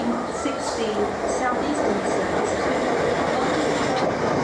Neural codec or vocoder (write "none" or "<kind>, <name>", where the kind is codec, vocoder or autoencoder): none